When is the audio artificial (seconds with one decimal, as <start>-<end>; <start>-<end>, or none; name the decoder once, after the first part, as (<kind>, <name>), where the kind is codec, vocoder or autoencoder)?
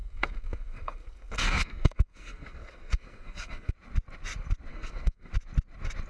0.0-3.7 (codec, SNAC); 4.7-5.3